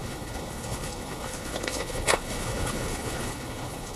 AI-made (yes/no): yes